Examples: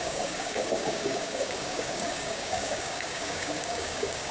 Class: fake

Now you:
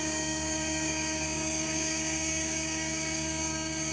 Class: fake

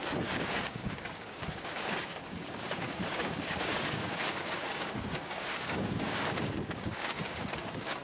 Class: fake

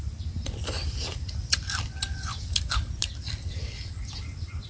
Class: real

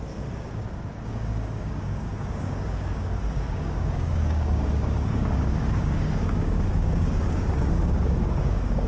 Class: fake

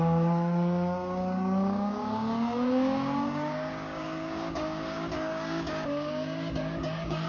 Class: fake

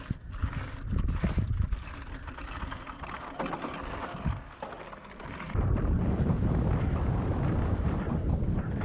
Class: real